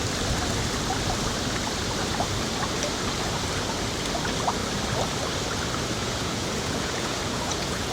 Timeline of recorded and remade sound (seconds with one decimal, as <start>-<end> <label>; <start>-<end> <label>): 0.0-6.0 recorded; 6.0-7.9 remade